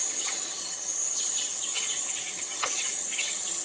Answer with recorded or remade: remade